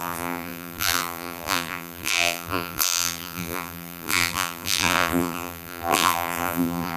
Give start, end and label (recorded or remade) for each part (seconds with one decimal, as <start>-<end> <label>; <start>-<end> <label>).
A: 0.0-7.0 remade